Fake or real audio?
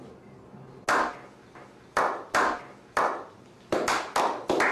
real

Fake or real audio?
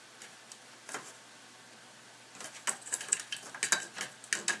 real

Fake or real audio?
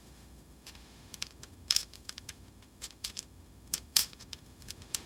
fake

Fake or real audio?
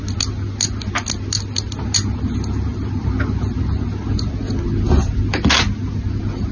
real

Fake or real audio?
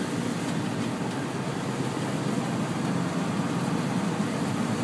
real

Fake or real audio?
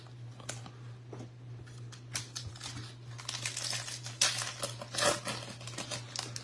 real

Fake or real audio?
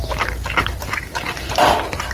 real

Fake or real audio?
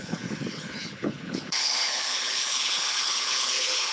fake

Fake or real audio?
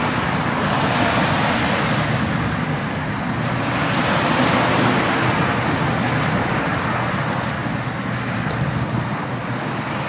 real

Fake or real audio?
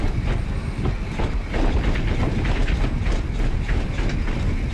real